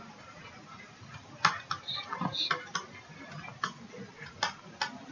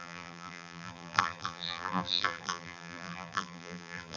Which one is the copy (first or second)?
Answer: second